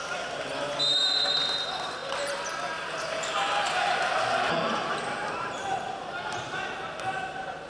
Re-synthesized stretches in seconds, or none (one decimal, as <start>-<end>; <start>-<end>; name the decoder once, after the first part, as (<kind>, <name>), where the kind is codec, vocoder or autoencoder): 2.0-5.9 (vocoder, BigVGAN v2)